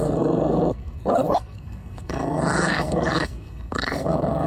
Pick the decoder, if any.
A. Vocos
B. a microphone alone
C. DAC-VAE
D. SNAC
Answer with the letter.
D